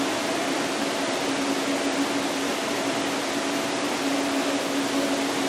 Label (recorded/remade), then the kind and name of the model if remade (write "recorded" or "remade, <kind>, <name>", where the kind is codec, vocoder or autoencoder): recorded